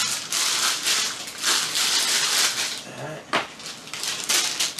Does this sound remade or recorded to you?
recorded